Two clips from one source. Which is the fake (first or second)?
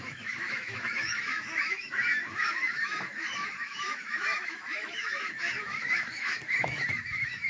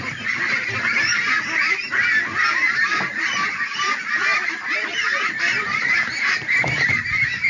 first